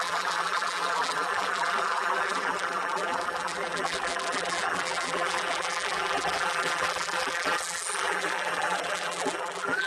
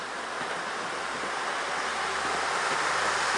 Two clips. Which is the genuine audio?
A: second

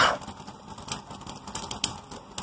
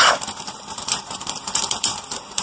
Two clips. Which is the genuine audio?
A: first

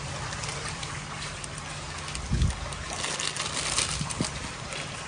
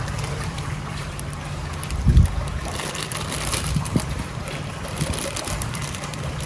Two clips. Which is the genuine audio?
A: first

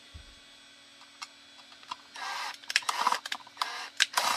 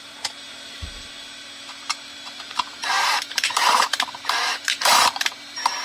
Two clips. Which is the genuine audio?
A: first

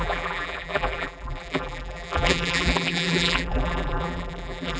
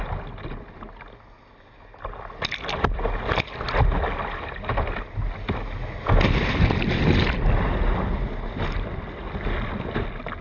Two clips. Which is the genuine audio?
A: second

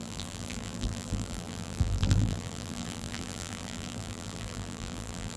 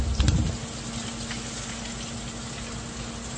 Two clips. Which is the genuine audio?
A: second